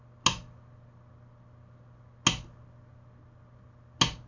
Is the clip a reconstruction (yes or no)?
no